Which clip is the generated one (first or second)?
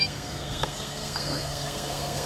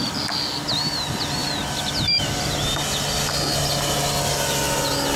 first